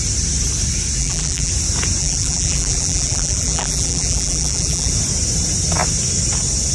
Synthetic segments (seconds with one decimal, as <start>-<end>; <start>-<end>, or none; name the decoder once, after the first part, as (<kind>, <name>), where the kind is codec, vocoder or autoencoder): 1.0-1.5 (vocoder, BigVGAN v2); 2.0-4.9